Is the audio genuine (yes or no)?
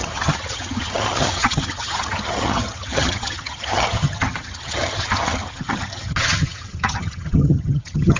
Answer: no